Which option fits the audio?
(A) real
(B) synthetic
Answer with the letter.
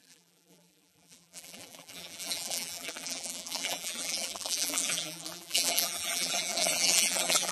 B